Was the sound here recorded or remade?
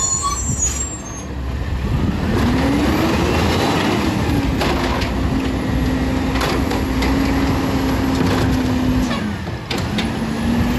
recorded